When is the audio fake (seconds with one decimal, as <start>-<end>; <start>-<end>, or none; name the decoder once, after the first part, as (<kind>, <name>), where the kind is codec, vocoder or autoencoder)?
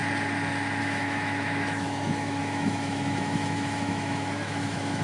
0.8-5.0 (autoencoder, DAC-VAE)